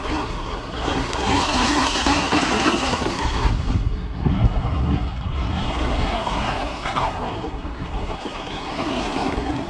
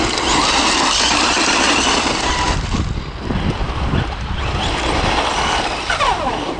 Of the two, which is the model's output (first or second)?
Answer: first